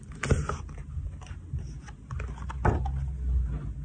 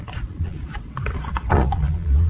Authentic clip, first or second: first